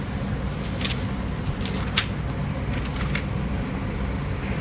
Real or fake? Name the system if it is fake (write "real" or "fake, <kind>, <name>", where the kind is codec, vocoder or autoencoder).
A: real